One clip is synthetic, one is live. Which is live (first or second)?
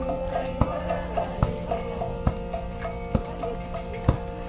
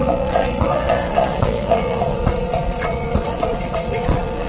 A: first